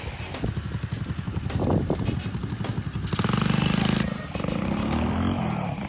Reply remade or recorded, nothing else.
recorded